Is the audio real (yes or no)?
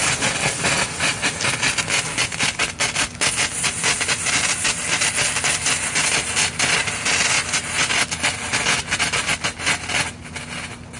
yes